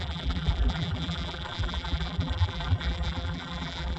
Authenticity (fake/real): fake